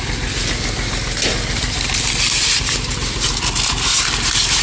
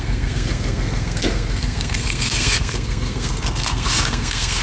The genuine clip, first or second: first